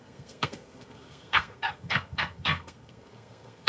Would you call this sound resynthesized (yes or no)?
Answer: yes